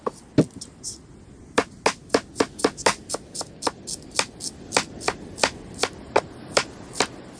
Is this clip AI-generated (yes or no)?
no